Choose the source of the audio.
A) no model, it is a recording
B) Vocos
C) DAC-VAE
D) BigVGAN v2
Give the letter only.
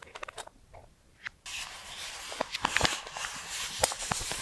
D